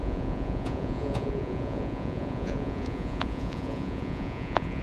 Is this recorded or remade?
remade